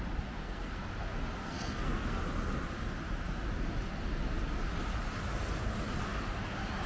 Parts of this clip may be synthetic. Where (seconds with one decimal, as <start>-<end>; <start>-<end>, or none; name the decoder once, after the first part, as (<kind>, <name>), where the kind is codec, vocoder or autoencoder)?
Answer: 0.4-0.9 (codec, SNAC); 1.4-2.2

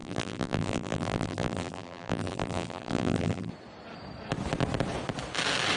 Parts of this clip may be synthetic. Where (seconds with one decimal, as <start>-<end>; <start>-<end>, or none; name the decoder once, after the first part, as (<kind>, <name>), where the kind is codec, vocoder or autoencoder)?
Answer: 0.0-3.5 (vocoder, BigVGAN v2)